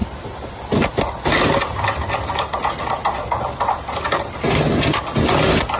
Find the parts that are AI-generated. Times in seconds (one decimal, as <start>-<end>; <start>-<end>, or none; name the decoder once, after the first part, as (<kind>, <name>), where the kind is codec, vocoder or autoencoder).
none